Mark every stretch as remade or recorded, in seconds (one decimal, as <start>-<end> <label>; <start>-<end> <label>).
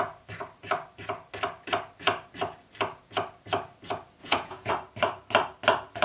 0.0-4.2 recorded; 4.2-4.7 remade; 4.7-6.0 recorded